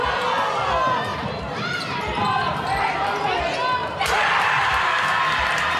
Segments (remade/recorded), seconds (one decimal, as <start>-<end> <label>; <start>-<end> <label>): 0.0-1.1 recorded; 1.1-3.4 remade; 3.4-5.8 recorded